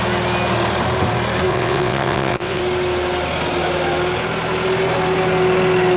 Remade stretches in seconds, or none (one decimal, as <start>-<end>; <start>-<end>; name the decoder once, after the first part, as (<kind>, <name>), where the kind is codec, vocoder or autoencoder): 1.5-2.6 (vocoder, WaveNeXt)